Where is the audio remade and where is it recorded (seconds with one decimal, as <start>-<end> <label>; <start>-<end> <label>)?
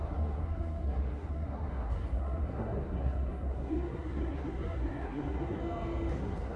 0.0-5.6 remade; 5.6-6.1 recorded; 6.1-6.6 remade